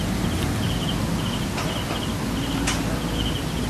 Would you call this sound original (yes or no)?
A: yes